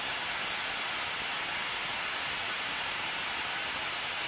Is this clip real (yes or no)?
yes